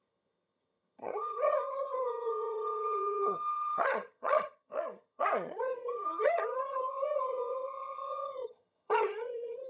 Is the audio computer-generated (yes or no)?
yes